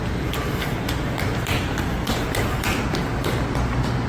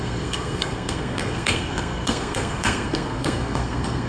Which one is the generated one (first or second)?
second